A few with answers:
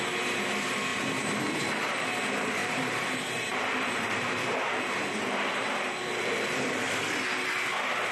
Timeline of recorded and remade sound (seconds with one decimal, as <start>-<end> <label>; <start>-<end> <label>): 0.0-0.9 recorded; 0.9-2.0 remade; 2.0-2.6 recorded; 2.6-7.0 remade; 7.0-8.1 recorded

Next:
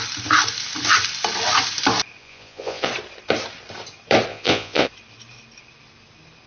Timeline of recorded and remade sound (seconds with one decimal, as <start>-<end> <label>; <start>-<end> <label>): 0.0-2.2 recorded; 2.2-2.9 remade; 2.9-4.3 recorded; 4.3-4.9 remade; 4.9-6.5 recorded

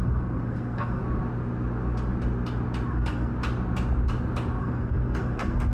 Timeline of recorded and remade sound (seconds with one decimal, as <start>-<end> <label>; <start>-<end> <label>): 0.0-1.0 remade; 1.0-2.9 recorded; 2.9-3.3 remade; 3.3-4.6 recorded; 4.6-5.7 remade

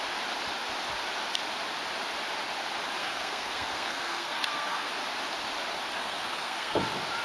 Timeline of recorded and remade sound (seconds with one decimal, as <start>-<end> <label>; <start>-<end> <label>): 0.0-3.0 recorded; 3.0-4.9 remade; 4.9-6.0 recorded; 6.0-6.8 remade; 6.8-7.2 recorded

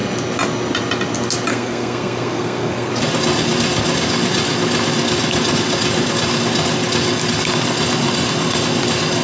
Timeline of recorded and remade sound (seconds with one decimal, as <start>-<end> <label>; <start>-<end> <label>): 0.0-1.5 recorded; 1.5-2.9 remade; 2.9-9.2 recorded